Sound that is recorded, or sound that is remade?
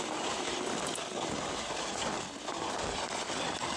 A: recorded